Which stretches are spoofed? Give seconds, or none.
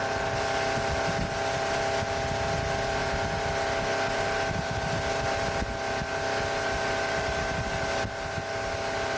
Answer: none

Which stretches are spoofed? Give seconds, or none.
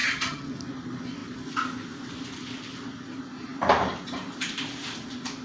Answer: 0.0-0.5 (vocoder, HiFi-GAN)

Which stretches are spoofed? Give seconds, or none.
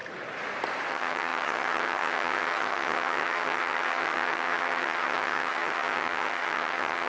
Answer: 0.9-7.1 (vocoder, HiFi-GAN)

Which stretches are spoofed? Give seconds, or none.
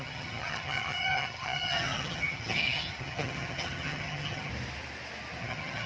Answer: 0.0-4.5 (vocoder, HiFi-GAN); 5.4-5.9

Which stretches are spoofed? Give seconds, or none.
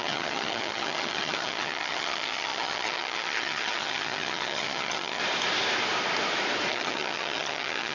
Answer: 0.0-5.2 (vocoder, HiFi-GAN); 6.7-7.9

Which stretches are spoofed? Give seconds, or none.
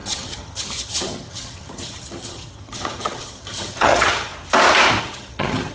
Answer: 0.0-4.3 (vocoder, HiFi-GAN); 5.0-5.7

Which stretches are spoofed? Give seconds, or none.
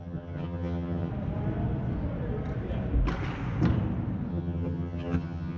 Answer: 0.0-1.1 (vocoder, HiFi-GAN); 4.3-5.6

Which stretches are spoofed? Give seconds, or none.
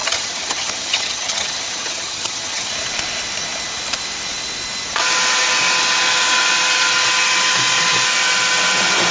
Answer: 0.0-2.7 (vocoder, HiFi-GAN)